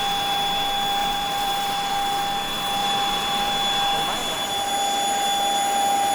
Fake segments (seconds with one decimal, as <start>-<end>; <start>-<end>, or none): 1.0-1.9; 2.8-3.5